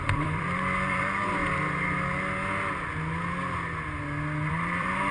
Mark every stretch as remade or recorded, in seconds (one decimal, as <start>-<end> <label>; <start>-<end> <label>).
0.0-1.4 remade; 1.4-4.5 recorded; 4.5-5.1 remade